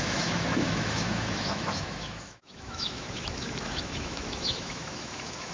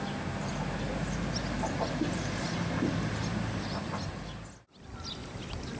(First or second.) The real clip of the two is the second